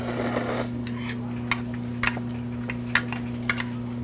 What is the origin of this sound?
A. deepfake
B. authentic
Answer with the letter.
B